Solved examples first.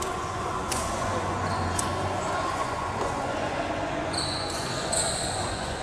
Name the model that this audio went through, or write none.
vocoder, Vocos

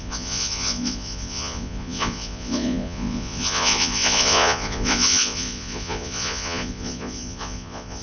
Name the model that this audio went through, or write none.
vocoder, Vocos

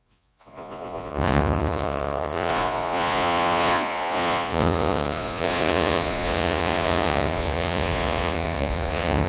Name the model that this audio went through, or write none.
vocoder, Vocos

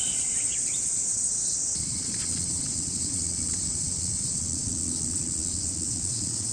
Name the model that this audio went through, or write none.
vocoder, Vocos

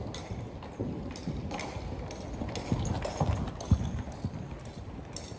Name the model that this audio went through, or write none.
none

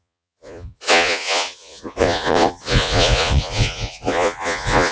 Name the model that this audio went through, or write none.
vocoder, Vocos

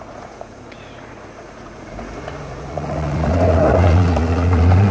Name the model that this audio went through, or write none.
vocoder, Vocos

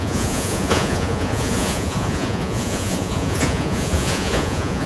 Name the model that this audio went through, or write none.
vocoder, Vocos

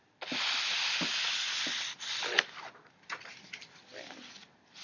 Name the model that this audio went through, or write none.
none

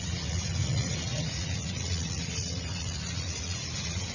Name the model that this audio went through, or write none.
vocoder, Vocos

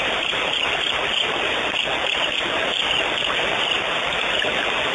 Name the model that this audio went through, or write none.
none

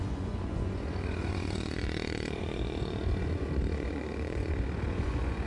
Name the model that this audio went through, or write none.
vocoder, Vocos